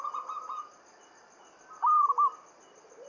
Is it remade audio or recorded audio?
recorded